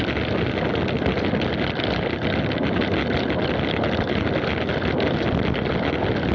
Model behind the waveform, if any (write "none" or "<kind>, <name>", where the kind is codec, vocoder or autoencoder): none